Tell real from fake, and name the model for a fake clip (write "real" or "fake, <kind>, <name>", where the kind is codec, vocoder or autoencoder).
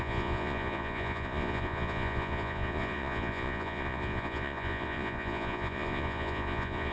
fake, vocoder, Vocos